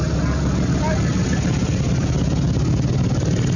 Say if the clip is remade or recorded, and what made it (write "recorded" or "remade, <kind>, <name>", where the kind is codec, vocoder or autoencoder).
recorded